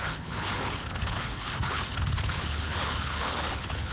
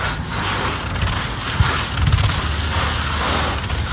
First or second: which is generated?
first